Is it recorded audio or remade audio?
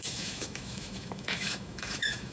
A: remade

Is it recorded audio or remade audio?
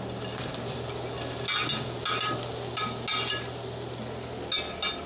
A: recorded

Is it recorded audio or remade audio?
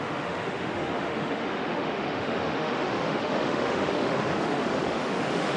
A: remade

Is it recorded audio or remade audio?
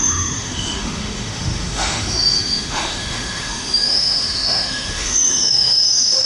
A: remade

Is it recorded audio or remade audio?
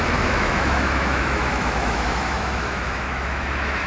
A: remade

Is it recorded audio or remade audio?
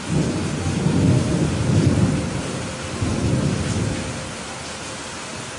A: recorded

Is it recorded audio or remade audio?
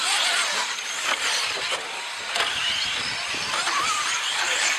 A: recorded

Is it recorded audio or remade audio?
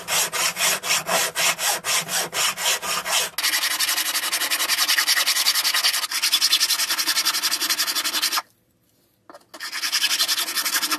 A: recorded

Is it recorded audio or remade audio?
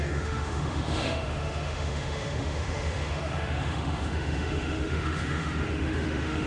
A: remade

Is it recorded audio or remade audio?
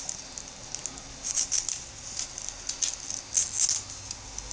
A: recorded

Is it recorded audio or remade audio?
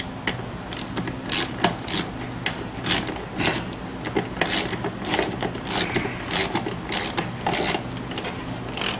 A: recorded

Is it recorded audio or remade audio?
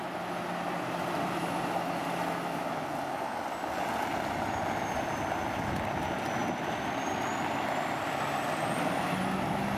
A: recorded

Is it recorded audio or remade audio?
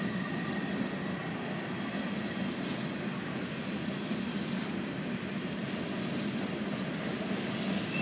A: recorded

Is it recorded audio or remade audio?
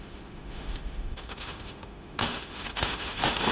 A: remade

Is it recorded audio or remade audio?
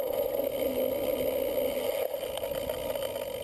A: recorded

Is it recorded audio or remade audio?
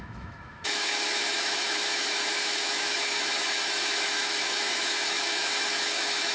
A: remade